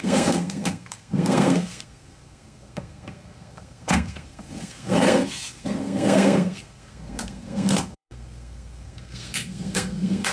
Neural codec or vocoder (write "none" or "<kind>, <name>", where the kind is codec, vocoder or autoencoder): codec, SNAC